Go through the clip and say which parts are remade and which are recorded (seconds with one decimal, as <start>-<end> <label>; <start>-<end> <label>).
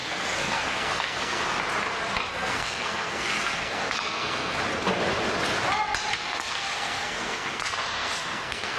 0.0-1.4 remade; 1.4-2.3 recorded; 2.3-4.6 remade; 4.6-6.1 recorded; 6.1-8.8 remade